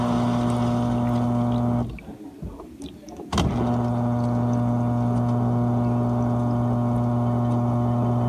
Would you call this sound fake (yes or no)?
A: no